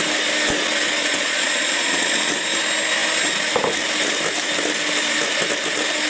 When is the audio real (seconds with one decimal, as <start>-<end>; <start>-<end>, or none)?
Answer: 0.0-1.0; 2.3-6.1